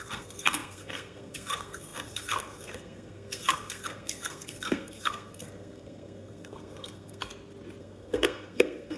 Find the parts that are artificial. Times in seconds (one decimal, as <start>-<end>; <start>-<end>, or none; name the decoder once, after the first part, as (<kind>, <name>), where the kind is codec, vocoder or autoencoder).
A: 0.0-7.3 (codec, SNAC); 7.8-9.0